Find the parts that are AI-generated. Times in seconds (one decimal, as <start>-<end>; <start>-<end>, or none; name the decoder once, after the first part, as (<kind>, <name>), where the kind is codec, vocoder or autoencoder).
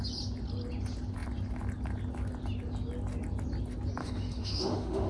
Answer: 4.0-5.1 (autoencoder, DAC-VAE)